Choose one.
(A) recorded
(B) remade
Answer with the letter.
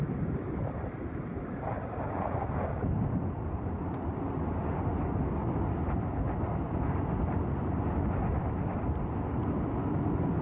A